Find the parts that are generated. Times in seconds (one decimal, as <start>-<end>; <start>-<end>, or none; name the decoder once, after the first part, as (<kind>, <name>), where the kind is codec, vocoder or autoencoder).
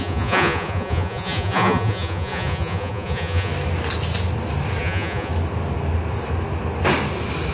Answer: 0.0-3.5 (vocoder, Vocos); 4.8-5.3